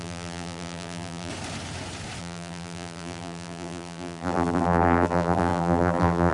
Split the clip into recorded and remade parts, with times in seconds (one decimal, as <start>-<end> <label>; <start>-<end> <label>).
0.0-1.3 remade; 1.3-2.2 recorded; 2.2-6.3 remade